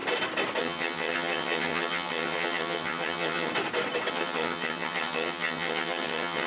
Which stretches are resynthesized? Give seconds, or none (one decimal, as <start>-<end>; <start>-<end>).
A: 0.6-3.5; 4.1-6.5